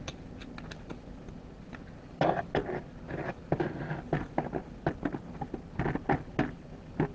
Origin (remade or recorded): recorded